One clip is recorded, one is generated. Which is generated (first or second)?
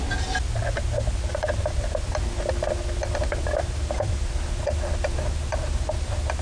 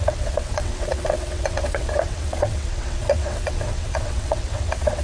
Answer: second